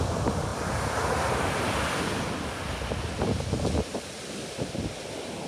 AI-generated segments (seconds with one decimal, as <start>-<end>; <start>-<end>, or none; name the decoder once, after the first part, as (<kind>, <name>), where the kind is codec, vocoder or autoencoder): none